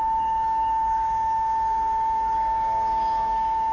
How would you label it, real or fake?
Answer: fake